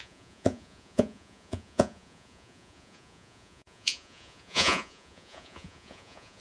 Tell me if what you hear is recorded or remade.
remade